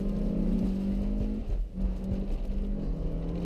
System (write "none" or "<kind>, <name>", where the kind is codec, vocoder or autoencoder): none